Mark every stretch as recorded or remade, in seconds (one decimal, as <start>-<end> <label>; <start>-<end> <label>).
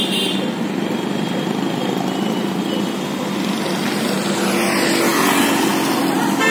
0.0-6.5 recorded